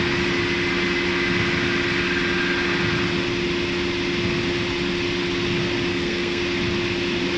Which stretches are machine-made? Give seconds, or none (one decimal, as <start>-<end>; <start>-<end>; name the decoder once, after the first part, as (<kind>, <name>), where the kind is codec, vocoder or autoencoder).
5.9-6.4 (codec, SNAC)